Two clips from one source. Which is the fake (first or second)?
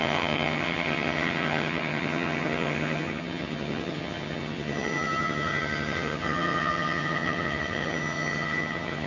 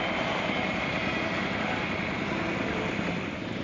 first